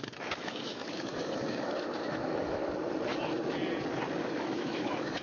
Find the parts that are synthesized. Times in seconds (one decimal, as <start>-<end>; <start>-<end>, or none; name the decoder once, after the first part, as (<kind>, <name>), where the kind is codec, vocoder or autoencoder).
0.0-2.6 (autoencoder, DAC-VAE); 4.2-5.2